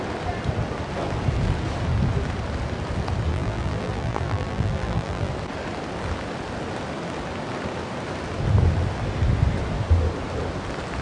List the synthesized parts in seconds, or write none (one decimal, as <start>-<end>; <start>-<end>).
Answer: 3.3-5.3